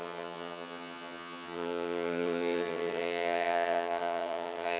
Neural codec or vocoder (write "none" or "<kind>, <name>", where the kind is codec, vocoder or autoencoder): vocoder, HiFi-GAN